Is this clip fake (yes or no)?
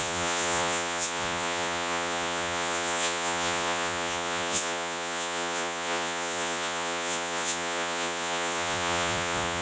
yes